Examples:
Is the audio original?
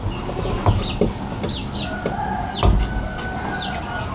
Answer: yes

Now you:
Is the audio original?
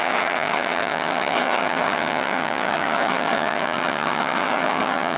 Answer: no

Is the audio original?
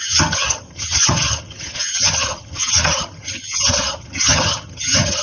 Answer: no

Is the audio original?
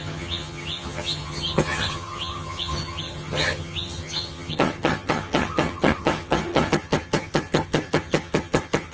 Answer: no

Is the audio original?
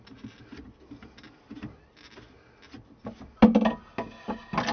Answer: yes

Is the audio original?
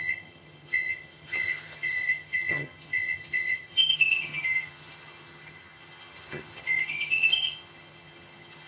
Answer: no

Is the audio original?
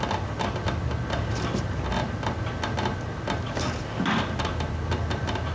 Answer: yes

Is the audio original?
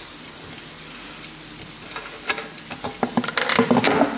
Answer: yes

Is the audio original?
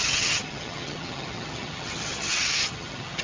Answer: no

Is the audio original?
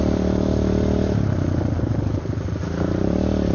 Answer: yes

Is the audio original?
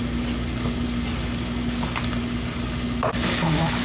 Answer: yes